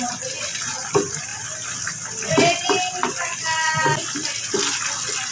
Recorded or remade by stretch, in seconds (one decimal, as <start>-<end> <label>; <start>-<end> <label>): 0.0-5.3 recorded